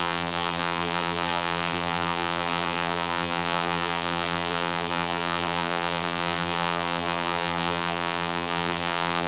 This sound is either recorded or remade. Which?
remade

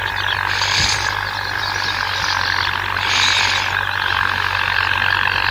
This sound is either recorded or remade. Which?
recorded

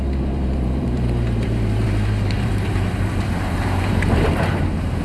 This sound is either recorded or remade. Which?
remade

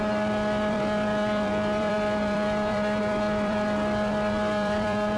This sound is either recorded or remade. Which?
remade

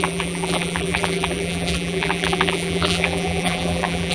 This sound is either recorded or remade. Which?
remade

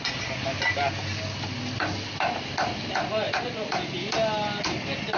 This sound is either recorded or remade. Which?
recorded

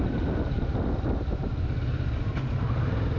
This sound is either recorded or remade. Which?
recorded